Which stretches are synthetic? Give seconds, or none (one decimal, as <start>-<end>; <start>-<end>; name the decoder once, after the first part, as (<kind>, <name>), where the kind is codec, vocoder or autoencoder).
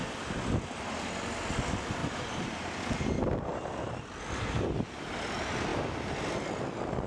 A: none